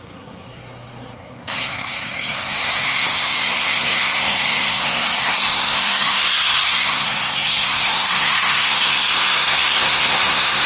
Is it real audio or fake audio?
fake